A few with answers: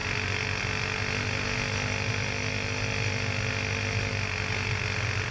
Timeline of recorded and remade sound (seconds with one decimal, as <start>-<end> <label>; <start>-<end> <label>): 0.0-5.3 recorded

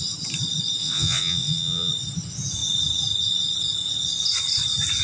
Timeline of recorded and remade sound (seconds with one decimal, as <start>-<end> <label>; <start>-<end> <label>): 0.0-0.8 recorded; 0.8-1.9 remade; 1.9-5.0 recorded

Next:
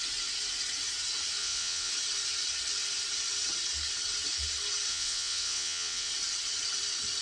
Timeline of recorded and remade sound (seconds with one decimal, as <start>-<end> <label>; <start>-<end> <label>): 0.0-1.4 recorded; 1.4-1.9 remade; 1.9-4.9 recorded; 4.9-6.1 remade; 6.1-7.2 recorded